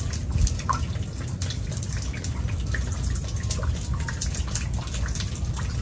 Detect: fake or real real